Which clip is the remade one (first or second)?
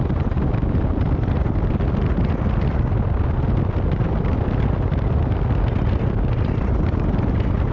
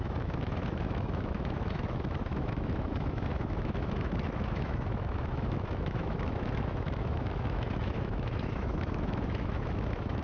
second